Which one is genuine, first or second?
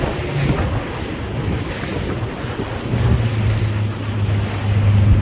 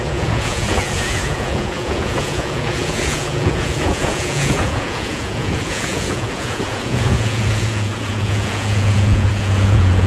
first